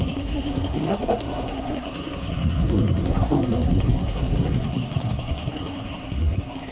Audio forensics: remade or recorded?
remade